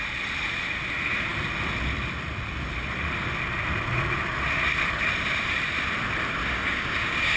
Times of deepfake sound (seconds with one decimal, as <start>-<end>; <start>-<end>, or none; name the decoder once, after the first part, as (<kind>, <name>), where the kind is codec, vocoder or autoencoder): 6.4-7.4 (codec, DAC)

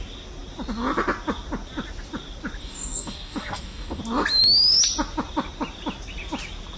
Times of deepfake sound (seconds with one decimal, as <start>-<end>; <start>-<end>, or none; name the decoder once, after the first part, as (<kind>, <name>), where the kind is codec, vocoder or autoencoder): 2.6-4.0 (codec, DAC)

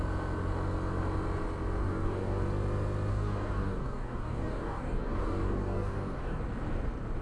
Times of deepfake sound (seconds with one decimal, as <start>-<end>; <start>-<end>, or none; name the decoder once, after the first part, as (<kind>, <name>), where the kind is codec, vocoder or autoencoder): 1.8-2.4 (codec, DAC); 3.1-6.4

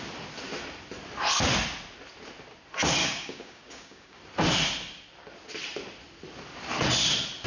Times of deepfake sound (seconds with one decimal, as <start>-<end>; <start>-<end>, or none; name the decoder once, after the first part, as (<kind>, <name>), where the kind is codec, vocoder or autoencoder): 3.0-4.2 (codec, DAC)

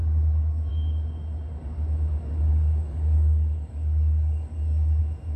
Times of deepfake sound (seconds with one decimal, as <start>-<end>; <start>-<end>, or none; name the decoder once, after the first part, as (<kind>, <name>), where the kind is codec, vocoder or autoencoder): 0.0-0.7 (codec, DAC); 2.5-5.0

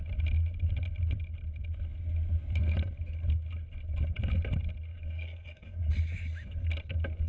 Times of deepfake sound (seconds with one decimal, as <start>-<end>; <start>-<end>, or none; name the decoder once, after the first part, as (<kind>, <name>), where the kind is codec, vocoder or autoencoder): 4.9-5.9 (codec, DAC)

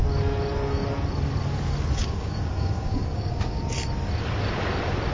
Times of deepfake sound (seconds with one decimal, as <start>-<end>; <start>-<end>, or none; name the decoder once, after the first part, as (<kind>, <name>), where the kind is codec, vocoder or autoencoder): 2.0-3.6 (codec, DAC)